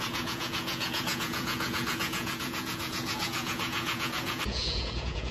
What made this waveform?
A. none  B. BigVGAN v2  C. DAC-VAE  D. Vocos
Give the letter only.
D